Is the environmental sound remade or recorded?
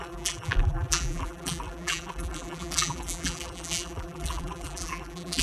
remade